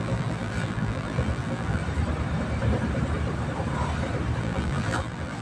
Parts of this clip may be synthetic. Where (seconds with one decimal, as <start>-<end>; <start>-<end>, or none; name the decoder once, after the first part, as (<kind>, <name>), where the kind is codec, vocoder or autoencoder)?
0.0-1.8 (vocoder, BigVGAN v2); 4.4-5.4

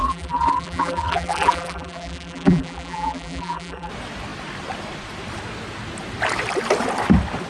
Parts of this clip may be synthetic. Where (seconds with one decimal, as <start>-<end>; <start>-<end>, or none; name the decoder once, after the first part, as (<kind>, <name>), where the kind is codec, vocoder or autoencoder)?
0.0-3.9 (vocoder, BigVGAN v2)

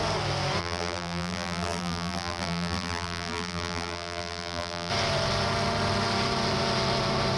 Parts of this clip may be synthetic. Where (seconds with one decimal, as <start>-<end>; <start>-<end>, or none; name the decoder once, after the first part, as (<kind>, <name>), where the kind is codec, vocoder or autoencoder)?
0.6-4.9 (vocoder, BigVGAN v2)

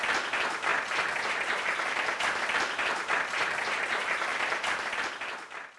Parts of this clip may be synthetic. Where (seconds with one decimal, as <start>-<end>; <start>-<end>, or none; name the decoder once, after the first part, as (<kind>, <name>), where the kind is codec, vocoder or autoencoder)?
0.7-3.1 (vocoder, BigVGAN v2); 4.3-5.1

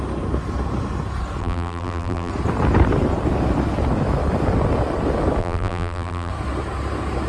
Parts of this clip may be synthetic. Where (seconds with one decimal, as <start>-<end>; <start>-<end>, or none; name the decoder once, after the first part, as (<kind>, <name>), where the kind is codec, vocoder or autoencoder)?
1.4-2.3 (vocoder, BigVGAN v2); 5.4-6.3